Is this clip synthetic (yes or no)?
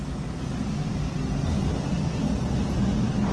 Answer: no